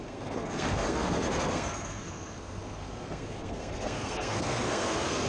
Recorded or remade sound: remade